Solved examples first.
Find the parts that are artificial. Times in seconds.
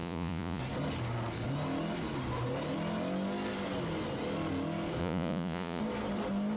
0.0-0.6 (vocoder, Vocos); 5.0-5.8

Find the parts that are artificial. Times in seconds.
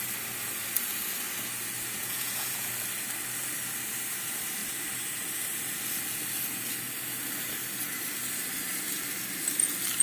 2.0-2.7 (vocoder, Vocos)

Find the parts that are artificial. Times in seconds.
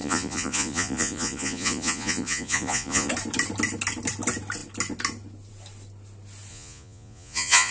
0.0-3.1 (vocoder, Vocos); 6.5-7.7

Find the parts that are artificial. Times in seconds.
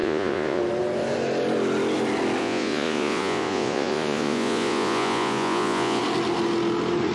0.0-0.6 (vocoder, Vocos); 2.4-6.0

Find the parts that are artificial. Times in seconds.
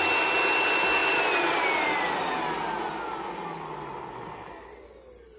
none